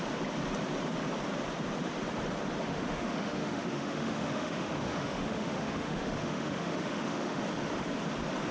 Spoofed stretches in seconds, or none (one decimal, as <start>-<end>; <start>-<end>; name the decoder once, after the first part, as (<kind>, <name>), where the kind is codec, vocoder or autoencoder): 2.7-7.4 (autoencoder, DAC-VAE)